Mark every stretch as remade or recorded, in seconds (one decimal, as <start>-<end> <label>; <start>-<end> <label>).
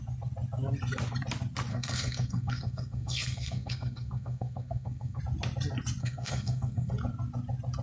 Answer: 0.0-1.7 recorded; 1.7-5.2 remade; 5.2-6.0 recorded; 6.0-6.9 remade; 6.9-7.8 recorded